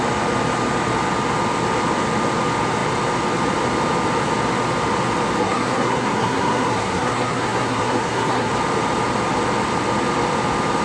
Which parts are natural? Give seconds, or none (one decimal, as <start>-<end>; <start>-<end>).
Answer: 0.0-5.4; 8.5-10.8